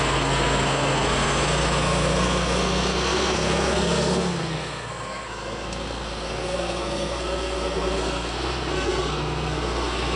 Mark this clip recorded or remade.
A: remade